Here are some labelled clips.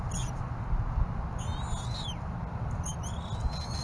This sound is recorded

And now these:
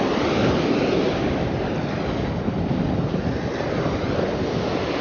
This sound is recorded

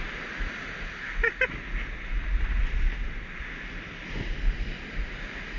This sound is recorded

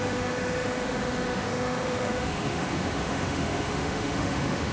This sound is remade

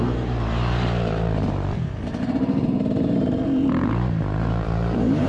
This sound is remade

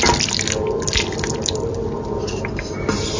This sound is recorded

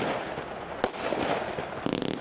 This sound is recorded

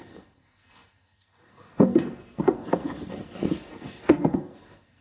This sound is remade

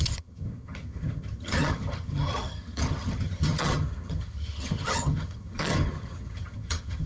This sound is remade